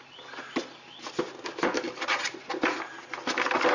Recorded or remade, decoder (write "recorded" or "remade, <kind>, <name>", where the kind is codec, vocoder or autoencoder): recorded